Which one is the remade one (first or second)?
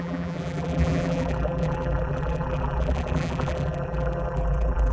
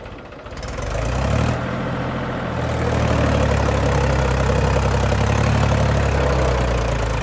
first